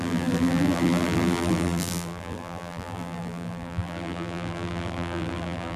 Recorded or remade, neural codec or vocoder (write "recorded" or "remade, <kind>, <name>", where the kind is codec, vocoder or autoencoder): remade, vocoder, BigVGAN v2